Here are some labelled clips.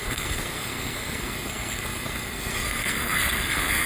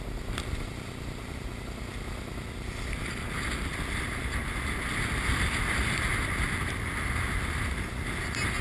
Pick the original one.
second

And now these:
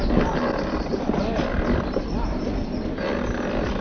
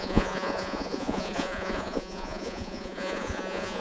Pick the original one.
first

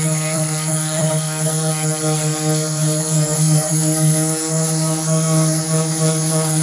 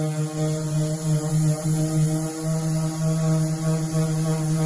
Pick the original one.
second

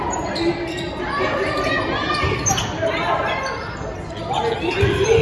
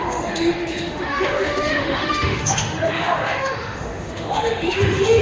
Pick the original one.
first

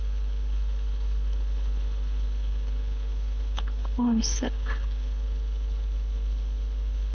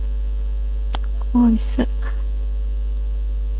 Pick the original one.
second